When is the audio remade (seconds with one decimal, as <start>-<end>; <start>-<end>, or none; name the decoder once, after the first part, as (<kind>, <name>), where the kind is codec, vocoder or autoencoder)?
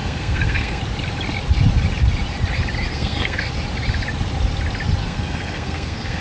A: 0.0-0.8 (codec, SNAC); 2.9-3.5; 5.0-6.2